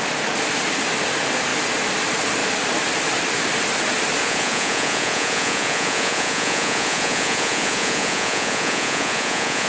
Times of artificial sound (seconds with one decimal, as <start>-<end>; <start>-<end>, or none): 4.2-9.7